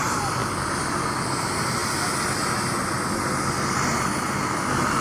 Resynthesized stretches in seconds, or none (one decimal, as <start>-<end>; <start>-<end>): none